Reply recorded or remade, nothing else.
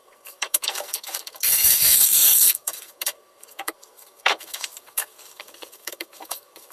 remade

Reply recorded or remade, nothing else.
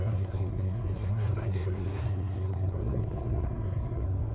remade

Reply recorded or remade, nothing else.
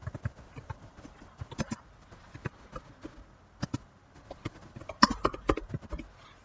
recorded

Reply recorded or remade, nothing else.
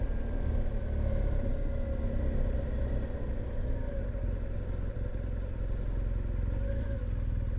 recorded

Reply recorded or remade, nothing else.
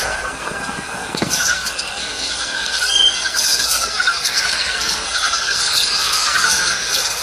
remade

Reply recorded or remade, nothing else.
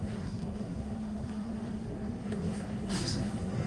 remade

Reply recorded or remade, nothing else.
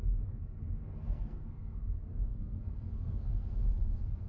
remade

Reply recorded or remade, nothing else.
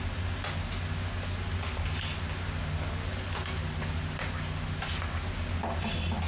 recorded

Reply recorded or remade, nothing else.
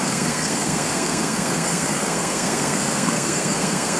remade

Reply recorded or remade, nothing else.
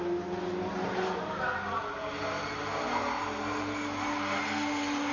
recorded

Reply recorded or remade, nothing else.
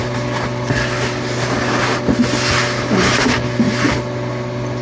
recorded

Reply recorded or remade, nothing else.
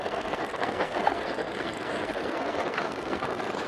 remade